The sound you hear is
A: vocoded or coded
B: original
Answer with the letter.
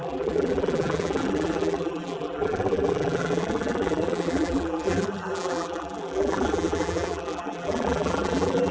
A